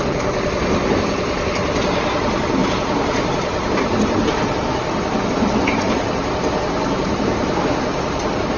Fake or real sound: real